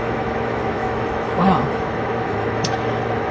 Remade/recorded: remade